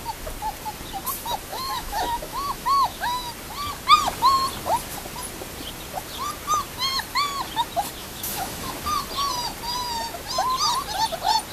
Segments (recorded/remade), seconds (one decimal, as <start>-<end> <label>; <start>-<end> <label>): 0.0-1.5 recorded; 1.5-3.3 remade; 3.3-8.0 recorded; 8.0-8.7 remade; 8.7-11.5 recorded